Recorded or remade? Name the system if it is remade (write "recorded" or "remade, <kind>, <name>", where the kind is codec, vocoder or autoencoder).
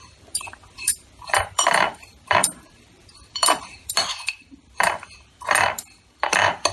remade, vocoder, BigVGAN v2